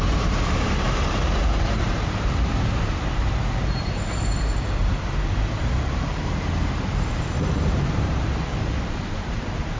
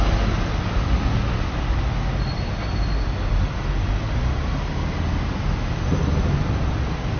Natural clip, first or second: second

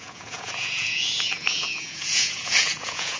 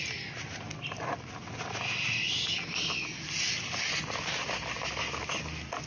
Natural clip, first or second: second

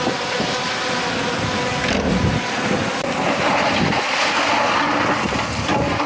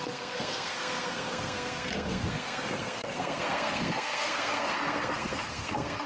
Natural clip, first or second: first